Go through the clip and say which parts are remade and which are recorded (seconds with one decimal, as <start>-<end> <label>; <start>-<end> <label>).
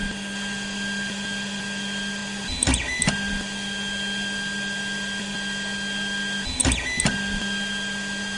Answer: 0.0-8.4 recorded